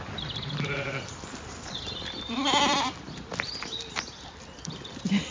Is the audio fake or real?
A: fake